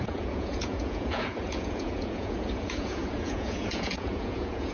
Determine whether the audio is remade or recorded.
remade